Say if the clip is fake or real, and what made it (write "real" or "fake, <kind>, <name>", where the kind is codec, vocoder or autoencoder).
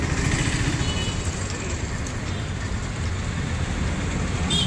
real